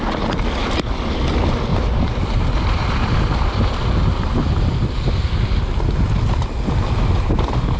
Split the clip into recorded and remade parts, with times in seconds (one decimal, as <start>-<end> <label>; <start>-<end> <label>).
0.0-1.7 recorded; 1.7-4.5 remade; 4.5-7.8 recorded